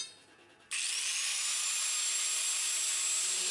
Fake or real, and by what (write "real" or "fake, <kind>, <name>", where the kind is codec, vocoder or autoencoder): real